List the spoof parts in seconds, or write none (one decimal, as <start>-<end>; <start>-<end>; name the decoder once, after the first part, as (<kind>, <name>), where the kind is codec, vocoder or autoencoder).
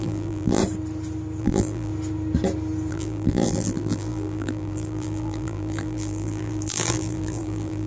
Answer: 0.0-0.6 (vocoder, BigVGAN v2); 1.4-1.9; 2.9-7.9